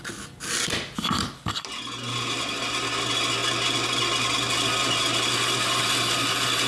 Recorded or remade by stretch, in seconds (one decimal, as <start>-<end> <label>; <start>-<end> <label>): 0.0-6.7 recorded

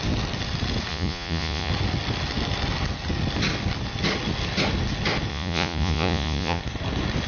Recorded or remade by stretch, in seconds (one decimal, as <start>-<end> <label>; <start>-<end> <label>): 0.0-0.9 recorded; 0.9-1.7 remade; 1.7-5.3 recorded; 5.3-6.6 remade; 6.6-7.3 recorded

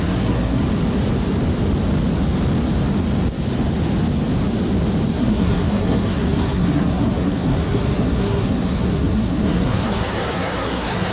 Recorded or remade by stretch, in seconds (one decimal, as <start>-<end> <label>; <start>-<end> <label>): 0.0-0.6 remade; 0.6-5.1 recorded; 5.1-11.1 remade

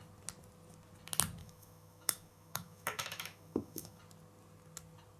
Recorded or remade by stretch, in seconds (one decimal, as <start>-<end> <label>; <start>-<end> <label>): 0.0-1.4 recorded; 1.4-4.0 remade; 4.0-5.2 recorded

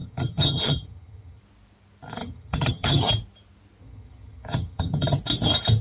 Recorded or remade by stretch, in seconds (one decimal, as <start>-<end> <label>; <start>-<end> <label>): 0.0-1.4 remade; 1.4-2.2 recorded; 2.2-3.1 remade; 3.1-3.8 recorded; 3.8-5.2 remade; 5.2-5.8 recorded

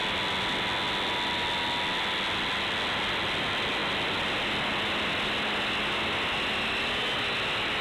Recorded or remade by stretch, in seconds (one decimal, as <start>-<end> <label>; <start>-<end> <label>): 0.0-7.8 recorded

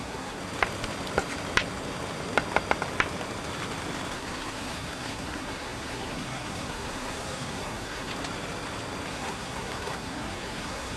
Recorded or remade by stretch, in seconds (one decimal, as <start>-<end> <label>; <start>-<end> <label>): 0.0-0.4 remade; 0.4-4.1 recorded; 4.1-8.1 remade; 8.1-9.1 recorded; 9.1-11.0 remade